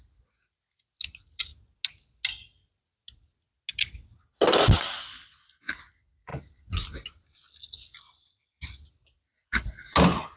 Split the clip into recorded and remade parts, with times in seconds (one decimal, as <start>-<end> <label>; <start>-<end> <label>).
0.0-10.4 recorded